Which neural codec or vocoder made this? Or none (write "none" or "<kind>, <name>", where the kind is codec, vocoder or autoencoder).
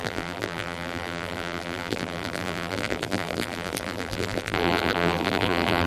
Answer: vocoder, BigVGAN v2